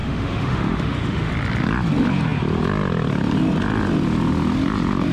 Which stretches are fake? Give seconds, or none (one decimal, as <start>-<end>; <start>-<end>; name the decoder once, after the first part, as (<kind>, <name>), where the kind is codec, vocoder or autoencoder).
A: 0.0-1.3 (autoencoder, DAC-VAE)